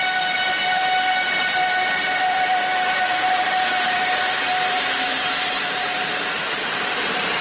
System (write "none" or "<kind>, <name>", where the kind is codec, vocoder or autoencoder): vocoder, BigVGAN v2